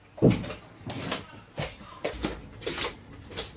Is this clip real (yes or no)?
yes